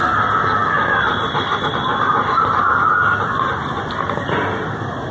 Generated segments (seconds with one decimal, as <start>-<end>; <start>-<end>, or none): none